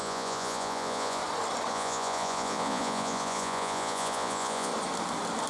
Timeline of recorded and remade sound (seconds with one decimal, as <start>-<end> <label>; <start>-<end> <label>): 0.0-1.2 remade; 1.2-1.7 recorded; 1.7-4.7 remade; 4.7-5.5 recorded